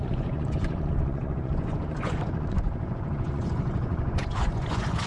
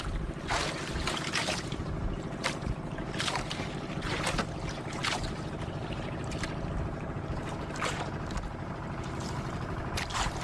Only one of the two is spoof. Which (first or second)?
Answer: first